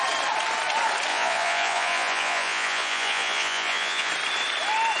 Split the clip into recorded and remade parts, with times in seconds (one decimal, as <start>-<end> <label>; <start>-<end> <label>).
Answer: 0.0-1.1 recorded; 1.1-4.1 remade; 4.1-5.0 recorded